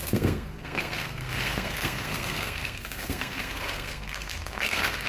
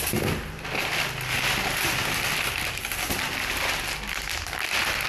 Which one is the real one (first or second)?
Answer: second